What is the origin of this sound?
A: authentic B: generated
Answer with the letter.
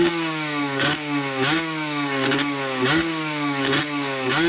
B